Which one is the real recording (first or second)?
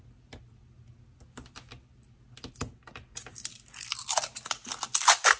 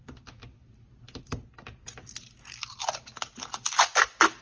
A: first